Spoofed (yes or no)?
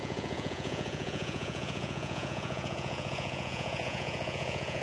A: yes